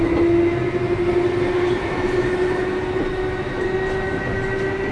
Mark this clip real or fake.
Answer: real